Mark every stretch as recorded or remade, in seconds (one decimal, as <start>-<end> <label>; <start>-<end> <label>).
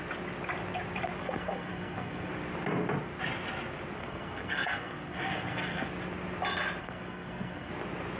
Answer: 0.0-1.2 recorded; 1.2-2.3 remade; 2.3-4.0 recorded; 4.0-5.9 remade; 5.9-6.8 recorded; 6.8-7.7 remade; 7.7-8.2 recorded